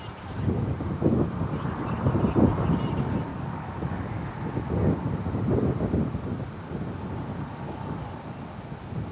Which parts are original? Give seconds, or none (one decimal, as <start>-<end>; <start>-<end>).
0.0-3.3; 4.3-7.5; 8.1-9.1